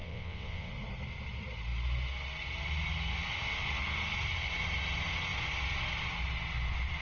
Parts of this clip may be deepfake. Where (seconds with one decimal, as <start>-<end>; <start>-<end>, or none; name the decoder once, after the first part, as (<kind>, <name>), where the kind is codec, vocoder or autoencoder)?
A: 0.0-0.7 (vocoder, WaveNeXt)